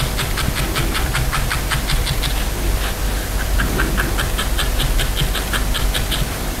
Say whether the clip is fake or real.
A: real